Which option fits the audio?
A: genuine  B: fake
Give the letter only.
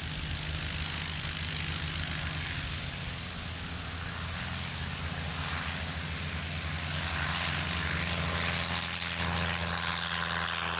A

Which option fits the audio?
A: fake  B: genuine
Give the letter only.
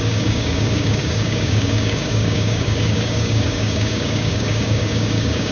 A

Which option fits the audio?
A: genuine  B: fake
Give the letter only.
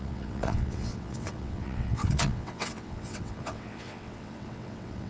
B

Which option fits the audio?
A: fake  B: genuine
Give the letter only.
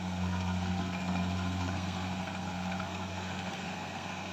A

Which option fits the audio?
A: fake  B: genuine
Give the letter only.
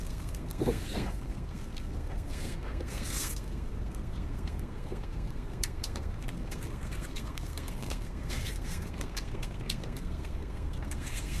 A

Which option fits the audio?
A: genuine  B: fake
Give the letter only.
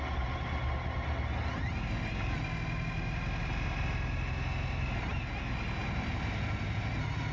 A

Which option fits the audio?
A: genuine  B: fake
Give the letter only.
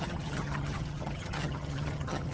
B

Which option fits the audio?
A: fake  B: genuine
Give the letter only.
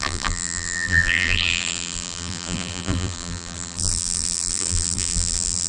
A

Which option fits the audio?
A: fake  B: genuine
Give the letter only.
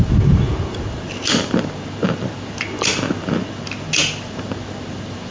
B